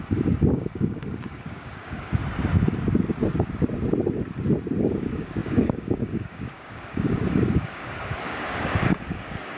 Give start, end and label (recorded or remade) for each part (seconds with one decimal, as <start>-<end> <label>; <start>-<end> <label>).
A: 0.0-2.2 remade; 2.2-4.8 recorded; 4.8-9.6 remade